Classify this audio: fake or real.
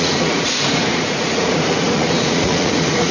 fake